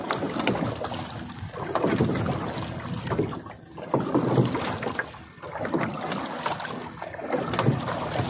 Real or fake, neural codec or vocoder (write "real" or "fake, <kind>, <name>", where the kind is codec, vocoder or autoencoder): real